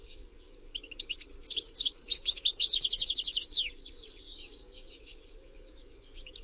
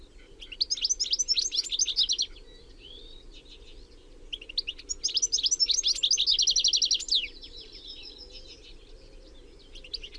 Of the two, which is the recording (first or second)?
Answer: second